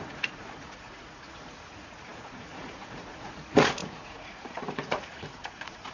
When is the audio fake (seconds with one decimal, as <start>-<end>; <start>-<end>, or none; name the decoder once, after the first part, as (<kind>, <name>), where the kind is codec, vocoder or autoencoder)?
0.0-5.9 (vocoder, Vocos)